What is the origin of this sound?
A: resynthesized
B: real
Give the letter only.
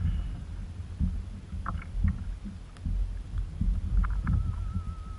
B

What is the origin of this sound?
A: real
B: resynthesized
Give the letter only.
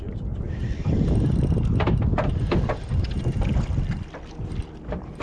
A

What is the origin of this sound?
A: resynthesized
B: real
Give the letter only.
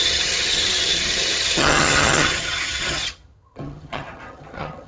A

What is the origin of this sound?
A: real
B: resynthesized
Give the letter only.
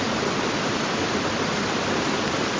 A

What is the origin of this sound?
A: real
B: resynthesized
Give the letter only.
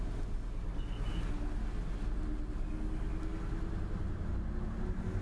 A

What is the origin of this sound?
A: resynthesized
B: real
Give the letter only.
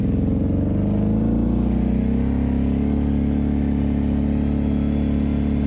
B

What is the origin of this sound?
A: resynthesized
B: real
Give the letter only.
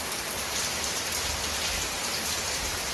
A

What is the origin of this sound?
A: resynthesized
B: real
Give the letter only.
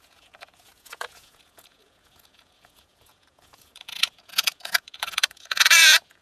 A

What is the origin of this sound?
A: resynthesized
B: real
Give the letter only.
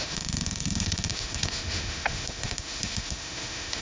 A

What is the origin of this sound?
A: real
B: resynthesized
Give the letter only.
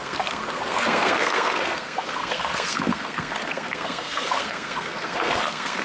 B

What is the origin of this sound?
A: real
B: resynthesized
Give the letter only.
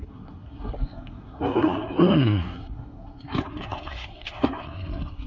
B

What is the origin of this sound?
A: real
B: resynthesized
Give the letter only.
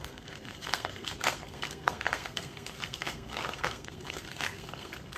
B